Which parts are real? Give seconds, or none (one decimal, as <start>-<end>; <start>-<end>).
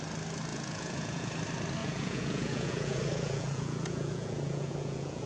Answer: 0.0-0.5; 1.3-1.8